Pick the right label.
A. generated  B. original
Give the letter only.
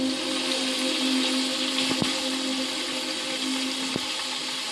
B